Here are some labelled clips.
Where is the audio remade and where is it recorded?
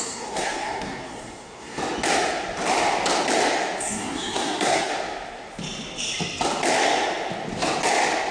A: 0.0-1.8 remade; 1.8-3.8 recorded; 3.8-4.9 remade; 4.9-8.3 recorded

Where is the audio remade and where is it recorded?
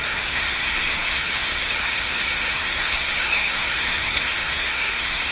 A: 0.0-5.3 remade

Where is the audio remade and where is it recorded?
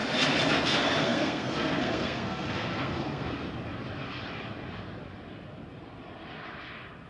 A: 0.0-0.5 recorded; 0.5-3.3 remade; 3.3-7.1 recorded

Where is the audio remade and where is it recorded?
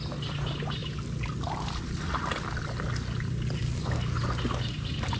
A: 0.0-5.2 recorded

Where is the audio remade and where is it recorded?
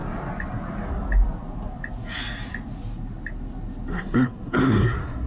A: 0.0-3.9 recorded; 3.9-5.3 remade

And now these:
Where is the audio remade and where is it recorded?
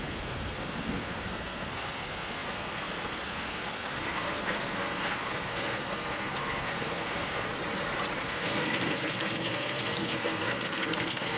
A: 0.0-7.5 remade; 7.5-8.2 recorded; 8.2-11.4 remade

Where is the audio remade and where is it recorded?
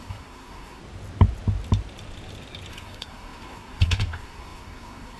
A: 0.0-0.8 remade; 0.8-2.7 recorded; 2.7-5.2 remade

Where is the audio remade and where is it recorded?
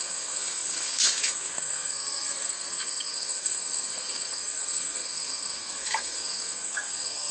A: 0.0-7.3 remade